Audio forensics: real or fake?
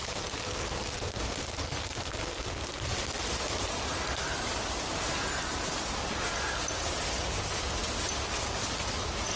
real